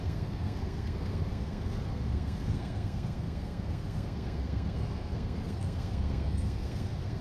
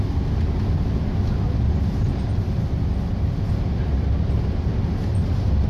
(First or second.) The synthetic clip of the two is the first